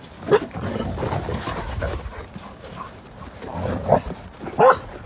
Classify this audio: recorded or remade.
recorded